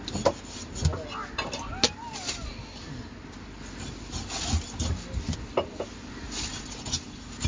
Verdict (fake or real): real